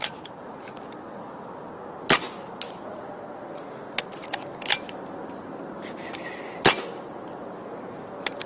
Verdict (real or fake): real